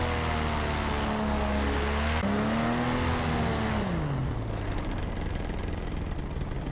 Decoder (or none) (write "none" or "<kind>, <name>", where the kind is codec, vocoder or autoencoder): none